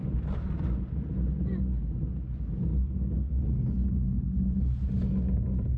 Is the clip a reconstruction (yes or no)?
no